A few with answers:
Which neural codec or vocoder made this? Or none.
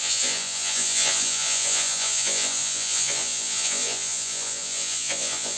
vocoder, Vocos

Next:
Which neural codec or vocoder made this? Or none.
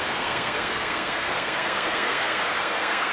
codec, SNAC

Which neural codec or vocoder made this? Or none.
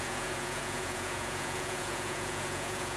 vocoder, Vocos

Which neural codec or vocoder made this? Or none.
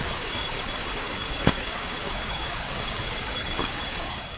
codec, DAC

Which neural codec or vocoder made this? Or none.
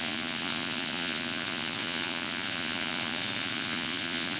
vocoder, Vocos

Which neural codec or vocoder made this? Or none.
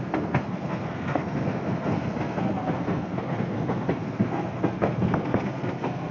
codec, SNAC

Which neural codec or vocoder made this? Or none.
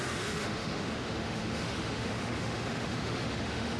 autoencoder, DAC-VAE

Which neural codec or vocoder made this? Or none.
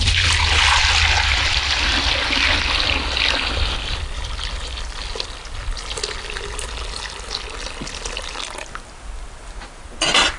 none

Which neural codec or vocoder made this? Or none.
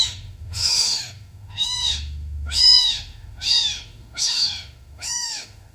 autoencoder, DAC-VAE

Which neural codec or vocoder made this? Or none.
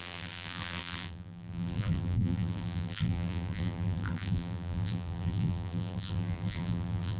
vocoder, BigVGAN v2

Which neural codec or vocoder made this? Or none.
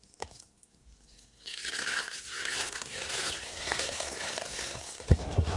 codec, SNAC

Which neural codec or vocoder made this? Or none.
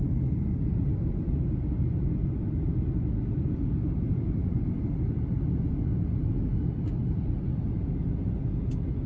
none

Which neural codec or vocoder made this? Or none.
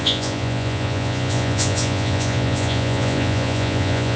vocoder, Vocos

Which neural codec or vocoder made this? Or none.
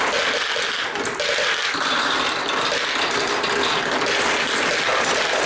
none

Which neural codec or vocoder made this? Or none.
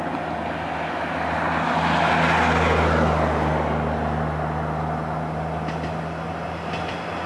none